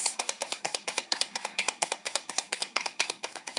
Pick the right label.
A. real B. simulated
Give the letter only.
B